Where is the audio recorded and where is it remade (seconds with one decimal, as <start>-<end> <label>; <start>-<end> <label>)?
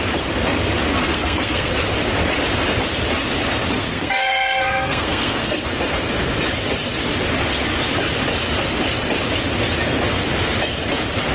0.0-0.9 recorded; 0.9-1.7 remade; 1.7-3.8 recorded; 3.8-5.7 remade; 5.7-11.3 recorded